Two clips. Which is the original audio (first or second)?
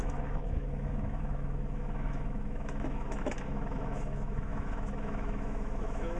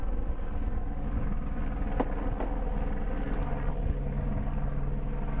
second